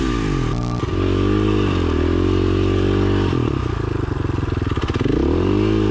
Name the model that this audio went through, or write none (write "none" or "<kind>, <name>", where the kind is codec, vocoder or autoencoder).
none